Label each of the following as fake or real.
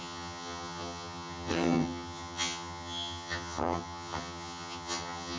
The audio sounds fake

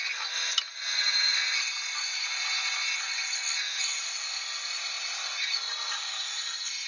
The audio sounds real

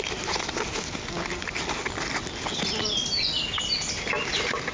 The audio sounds real